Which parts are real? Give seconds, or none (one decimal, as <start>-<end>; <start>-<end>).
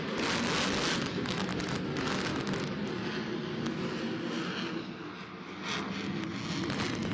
0.0-7.1